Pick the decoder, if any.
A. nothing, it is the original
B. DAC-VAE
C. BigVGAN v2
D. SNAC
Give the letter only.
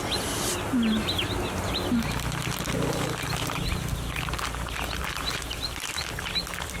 A